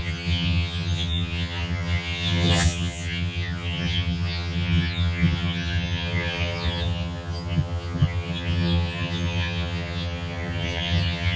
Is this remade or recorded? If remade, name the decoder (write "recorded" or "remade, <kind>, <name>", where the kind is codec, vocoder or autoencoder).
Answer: remade, vocoder, HiFi-GAN